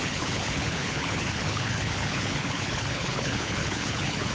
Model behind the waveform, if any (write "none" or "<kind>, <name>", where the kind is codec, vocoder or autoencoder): codec, HILCodec